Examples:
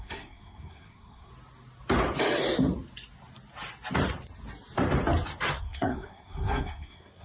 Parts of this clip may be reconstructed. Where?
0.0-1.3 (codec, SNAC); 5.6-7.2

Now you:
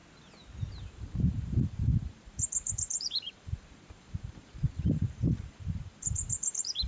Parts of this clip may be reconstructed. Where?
0.8-6.9 (vocoder, BigVGAN v2)

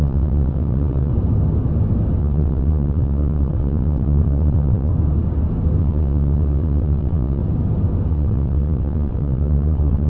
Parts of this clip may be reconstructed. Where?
0.0-1.1 (vocoder, WaveNeXt); 2.2-4.9; 5.8-7.4; 8.1-10.1

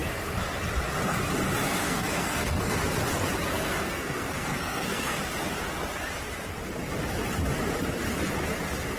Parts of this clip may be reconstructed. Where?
0.0-0.5 (codec, SNAC); 1.8-2.8; 3.5-5.2

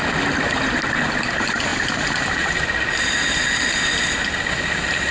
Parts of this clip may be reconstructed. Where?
none

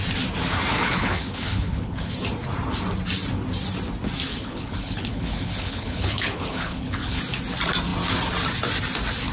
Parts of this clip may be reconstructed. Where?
0.7-2.1 (codec, HILCodec); 4.3-7.2

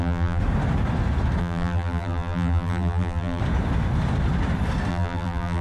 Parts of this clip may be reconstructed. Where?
0.0-0.4 (vocoder, BigVGAN v2); 1.4-3.4; 4.9-5.6

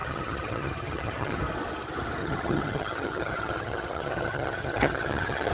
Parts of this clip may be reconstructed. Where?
0.0-1.4 (vocoder, HiFi-GAN); 2.2-5.5